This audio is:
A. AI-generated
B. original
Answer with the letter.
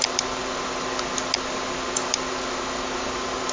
B